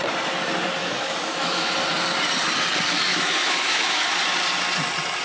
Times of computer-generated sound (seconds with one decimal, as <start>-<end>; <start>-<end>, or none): 0.8-1.7; 3.1-4.2